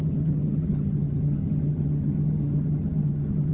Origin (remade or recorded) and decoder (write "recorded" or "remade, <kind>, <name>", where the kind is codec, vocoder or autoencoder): remade, vocoder, HiFi-GAN